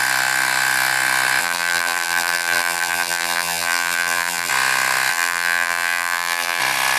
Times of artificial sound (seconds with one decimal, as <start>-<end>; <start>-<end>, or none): 1.4-4.5; 5.1-6.6